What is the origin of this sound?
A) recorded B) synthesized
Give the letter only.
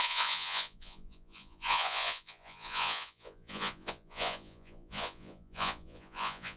B